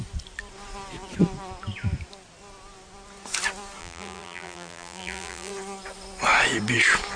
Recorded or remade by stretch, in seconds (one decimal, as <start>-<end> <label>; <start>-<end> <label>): 0.0-3.8 recorded; 3.8-5.5 remade; 5.5-7.2 recorded